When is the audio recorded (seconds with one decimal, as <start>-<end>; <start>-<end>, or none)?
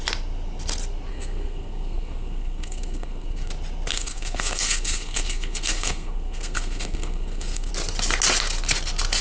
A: 0.0-1.1; 3.5-3.9; 7.7-9.2